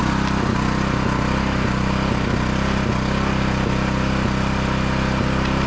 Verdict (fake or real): real